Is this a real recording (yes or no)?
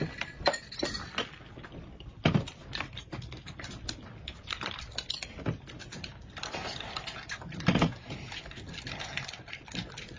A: yes